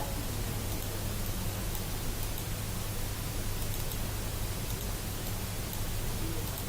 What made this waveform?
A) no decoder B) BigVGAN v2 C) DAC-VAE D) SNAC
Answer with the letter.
A